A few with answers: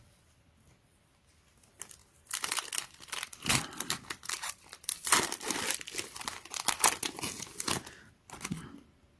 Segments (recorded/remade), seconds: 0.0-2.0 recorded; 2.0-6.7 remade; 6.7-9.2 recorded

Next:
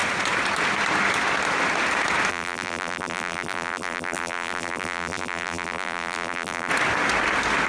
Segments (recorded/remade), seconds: 0.0-2.3 recorded; 2.3-6.7 remade; 6.7-7.7 recorded